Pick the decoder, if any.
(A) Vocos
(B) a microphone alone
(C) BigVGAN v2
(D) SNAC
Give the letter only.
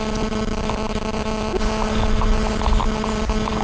B